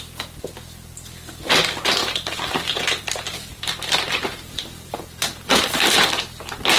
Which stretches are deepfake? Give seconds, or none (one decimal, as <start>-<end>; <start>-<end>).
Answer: 2.0-6.1